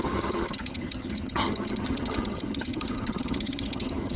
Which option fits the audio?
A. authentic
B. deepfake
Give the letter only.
B